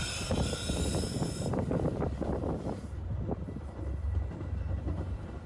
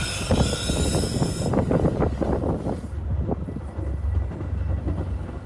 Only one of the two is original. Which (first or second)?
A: second